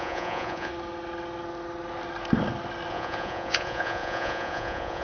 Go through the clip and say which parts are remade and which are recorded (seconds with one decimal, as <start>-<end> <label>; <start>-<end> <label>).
0.0-0.7 remade; 0.7-2.9 recorded; 2.9-5.0 remade